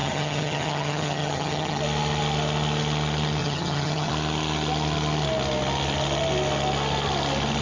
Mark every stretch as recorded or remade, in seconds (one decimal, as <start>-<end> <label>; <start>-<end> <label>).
0.0-1.8 remade; 1.8-3.4 recorded; 3.4-4.1 remade; 4.1-7.6 recorded